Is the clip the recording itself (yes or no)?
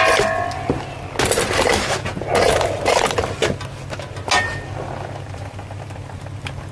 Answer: yes